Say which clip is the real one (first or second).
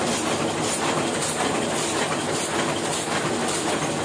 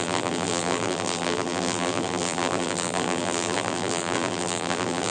first